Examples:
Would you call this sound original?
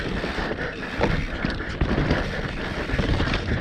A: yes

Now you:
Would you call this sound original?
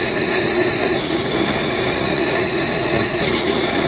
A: no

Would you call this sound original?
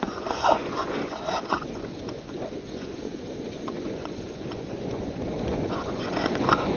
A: no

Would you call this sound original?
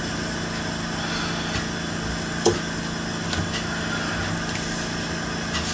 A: yes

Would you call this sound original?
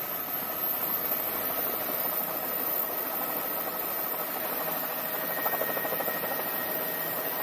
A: yes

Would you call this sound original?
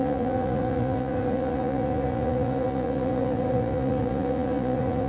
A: no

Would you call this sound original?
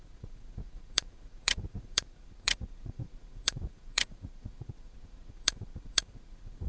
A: no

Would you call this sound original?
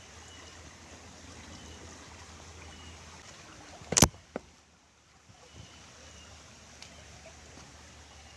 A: yes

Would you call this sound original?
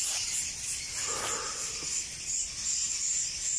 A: yes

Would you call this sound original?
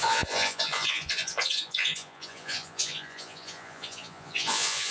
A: no